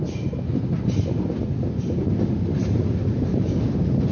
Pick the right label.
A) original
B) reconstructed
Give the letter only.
A